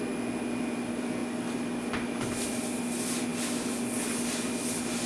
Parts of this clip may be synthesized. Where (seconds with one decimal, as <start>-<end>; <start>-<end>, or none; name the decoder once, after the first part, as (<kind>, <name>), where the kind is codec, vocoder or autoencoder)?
none